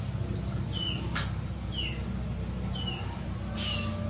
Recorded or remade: recorded